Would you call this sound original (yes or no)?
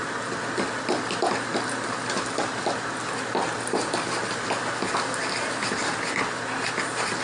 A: yes